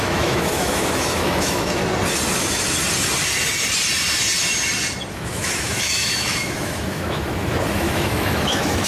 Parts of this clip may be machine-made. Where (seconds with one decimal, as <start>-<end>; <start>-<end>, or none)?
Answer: 0.0-1.8; 5.1-8.9